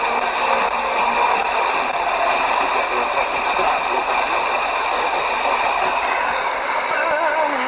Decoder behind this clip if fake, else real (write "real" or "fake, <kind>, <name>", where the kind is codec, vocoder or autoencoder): real